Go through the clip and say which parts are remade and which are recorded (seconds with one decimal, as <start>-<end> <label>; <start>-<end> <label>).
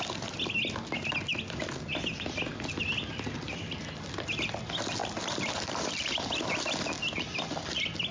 0.0-8.1 recorded